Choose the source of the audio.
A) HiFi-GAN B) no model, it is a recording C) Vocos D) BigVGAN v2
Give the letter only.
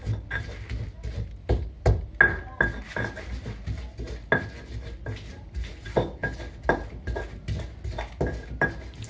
B